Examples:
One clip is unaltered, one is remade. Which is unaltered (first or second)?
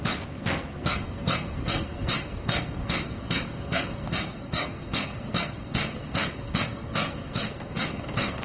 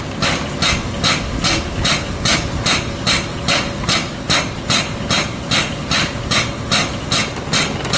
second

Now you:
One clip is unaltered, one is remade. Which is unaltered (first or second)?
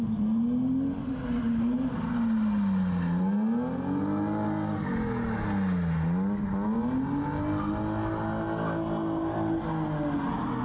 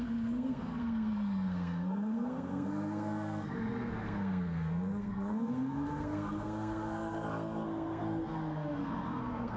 first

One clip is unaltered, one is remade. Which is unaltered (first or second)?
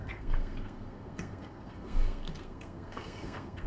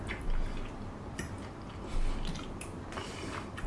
second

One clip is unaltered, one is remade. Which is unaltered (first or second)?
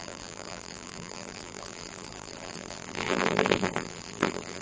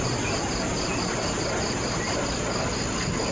second